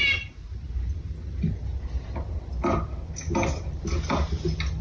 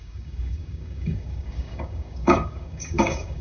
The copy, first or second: second